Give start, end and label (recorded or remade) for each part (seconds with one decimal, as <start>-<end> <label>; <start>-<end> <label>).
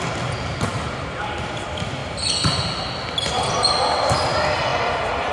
0.0-0.7 recorded; 0.7-1.4 remade; 1.4-2.0 recorded; 2.0-3.0 remade; 3.0-5.3 recorded